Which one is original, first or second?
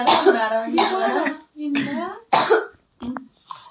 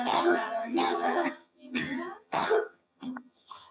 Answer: first